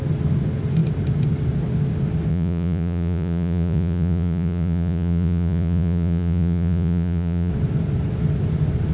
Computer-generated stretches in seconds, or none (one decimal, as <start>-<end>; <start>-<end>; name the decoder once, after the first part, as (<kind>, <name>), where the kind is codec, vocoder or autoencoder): 2.3-7.5 (vocoder, Vocos)